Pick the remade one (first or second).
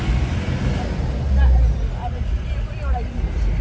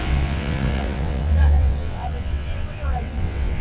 second